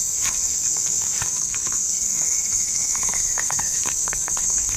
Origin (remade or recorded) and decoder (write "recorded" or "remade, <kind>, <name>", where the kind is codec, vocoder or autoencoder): remade, codec, SNAC